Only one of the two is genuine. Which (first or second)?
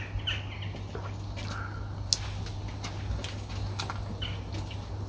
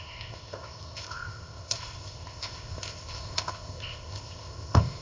first